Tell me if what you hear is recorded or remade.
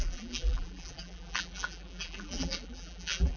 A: remade